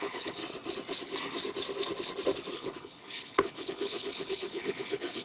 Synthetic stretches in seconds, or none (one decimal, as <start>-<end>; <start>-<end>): 0.0-0.4; 2.5-5.2